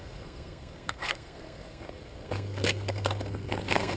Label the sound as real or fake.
fake